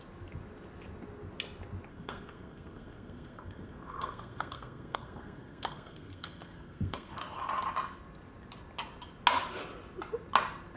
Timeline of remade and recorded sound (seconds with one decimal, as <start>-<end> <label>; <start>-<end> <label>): 0.0-1.9 recorded; 1.9-7.1 remade; 7.1-10.8 recorded